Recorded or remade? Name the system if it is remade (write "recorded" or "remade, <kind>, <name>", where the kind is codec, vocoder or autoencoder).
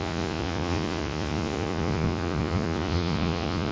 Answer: remade, vocoder, Vocos